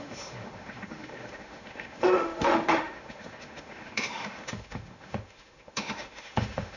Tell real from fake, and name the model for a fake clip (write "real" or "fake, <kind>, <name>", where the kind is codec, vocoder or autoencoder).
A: fake, autoencoder, DAC-VAE